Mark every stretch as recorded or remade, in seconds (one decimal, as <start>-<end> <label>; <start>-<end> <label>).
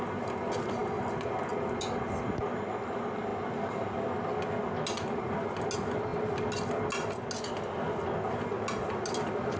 0.0-9.6 recorded